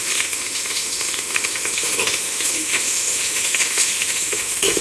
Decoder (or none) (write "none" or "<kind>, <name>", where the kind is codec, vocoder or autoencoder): autoencoder, DAC-VAE